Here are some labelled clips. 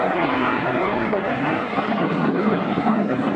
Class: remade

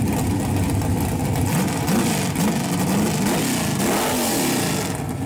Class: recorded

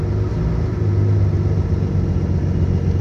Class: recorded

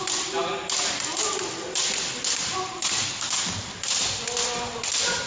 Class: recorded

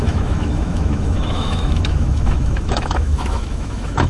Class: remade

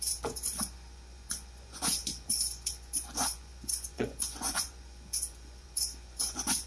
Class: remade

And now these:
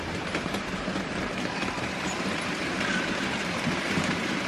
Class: remade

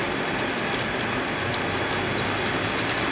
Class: recorded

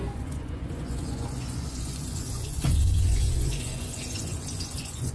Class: remade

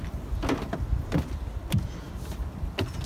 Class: recorded